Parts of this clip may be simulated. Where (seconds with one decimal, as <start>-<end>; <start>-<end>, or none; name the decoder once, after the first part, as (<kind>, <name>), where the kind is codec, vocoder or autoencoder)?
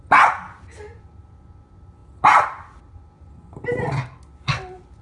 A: none